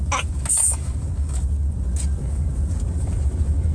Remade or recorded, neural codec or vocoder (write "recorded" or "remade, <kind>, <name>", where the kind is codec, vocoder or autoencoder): recorded